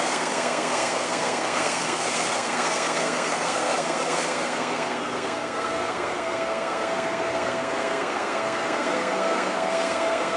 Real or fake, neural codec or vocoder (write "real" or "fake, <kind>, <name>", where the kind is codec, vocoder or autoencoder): fake, codec, SNAC